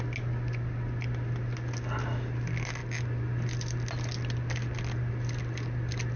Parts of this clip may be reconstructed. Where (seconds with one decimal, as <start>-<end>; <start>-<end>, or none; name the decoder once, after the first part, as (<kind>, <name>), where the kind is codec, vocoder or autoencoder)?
none